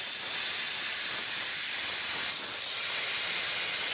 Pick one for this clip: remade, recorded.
recorded